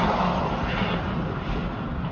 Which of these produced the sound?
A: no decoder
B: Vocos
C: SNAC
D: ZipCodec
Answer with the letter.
A